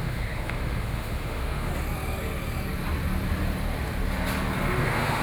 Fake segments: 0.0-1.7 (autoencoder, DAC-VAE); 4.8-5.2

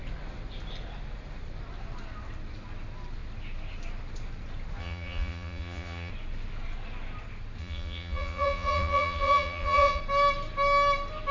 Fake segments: 4.8-6.1 (vocoder, Vocos); 7.6-10.0

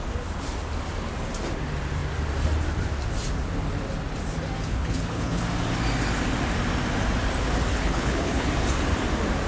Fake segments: 4.7-5.4 (codec, HILCodec); 7.7-8.5

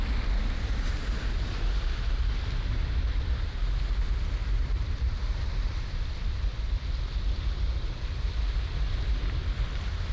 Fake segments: 4.4-5.7 (vocoder, BigVGAN v2)

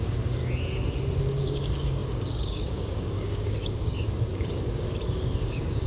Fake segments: 0.0-0.4 (codec, DAC); 1.2-5.9

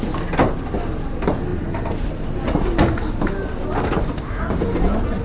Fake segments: none

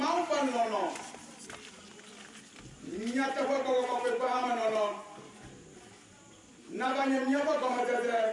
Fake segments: 7.2-7.8 (codec, DAC)